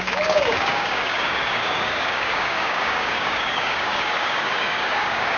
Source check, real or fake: fake